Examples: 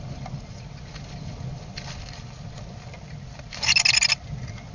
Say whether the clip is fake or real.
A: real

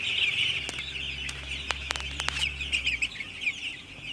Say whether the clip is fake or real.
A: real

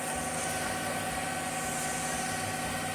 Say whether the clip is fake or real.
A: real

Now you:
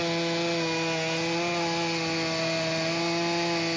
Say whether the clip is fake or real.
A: real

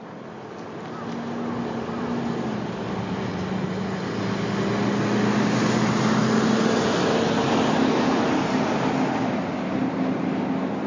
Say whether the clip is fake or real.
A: real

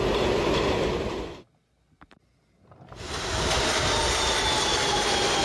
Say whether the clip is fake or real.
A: real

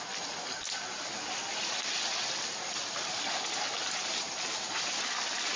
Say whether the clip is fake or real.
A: real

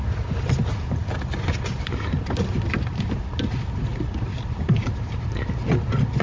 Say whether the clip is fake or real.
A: real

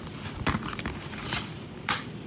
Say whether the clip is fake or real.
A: real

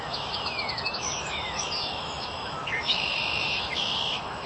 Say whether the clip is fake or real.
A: fake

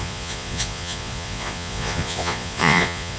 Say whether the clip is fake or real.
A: fake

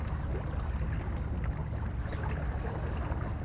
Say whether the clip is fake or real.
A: real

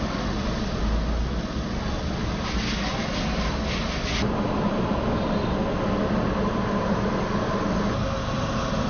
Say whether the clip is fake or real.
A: real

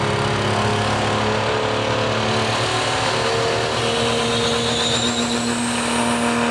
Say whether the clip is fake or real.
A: real